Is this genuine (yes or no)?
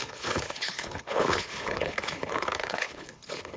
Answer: no